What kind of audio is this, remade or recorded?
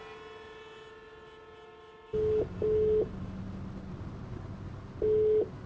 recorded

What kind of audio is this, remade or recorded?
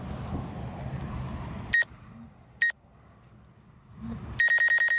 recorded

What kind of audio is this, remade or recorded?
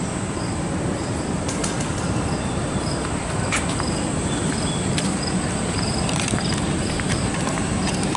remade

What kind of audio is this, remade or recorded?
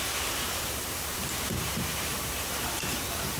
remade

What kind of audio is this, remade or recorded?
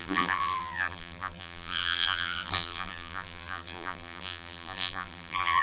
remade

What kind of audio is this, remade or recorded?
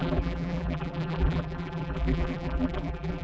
remade